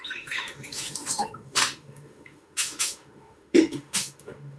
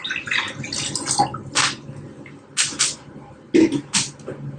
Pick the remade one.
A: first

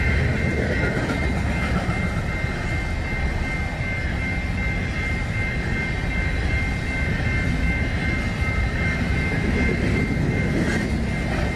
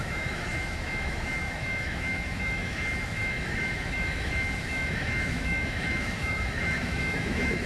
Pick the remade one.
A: second